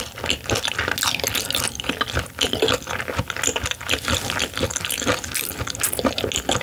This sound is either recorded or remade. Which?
recorded